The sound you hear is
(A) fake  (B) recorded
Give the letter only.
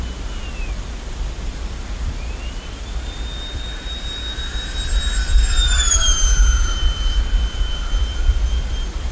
A